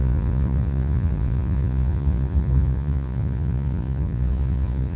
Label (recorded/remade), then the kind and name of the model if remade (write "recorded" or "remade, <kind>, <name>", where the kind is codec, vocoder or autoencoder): remade, vocoder, Vocos